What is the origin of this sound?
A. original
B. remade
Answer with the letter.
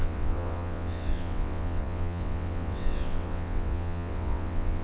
B